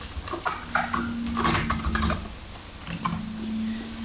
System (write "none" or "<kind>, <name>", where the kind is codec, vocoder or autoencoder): none